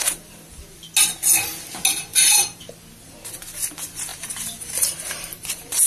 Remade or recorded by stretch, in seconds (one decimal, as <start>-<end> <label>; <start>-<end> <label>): 0.0-2.1 recorded; 2.1-2.7 remade; 2.7-4.1 recorded; 4.1-5.9 remade

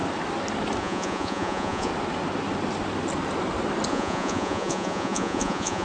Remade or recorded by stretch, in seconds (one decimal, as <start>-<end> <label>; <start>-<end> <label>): 0.0-0.8 recorded; 0.8-1.9 remade; 1.9-3.9 recorded; 3.9-5.8 remade

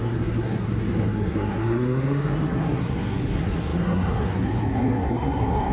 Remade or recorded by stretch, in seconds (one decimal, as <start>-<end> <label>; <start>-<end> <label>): 0.0-5.7 remade